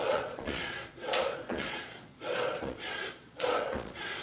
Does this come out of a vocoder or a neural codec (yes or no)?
yes